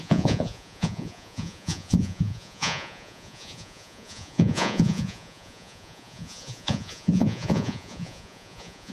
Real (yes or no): no